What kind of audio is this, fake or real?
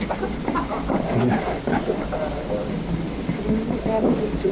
real